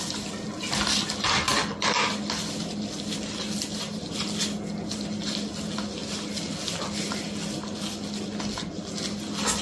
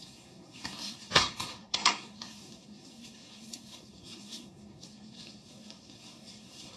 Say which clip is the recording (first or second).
first